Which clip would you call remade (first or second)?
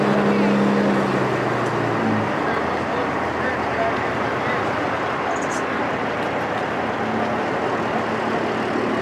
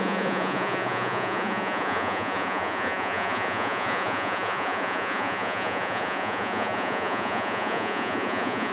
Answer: second